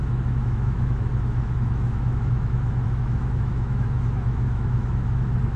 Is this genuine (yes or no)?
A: no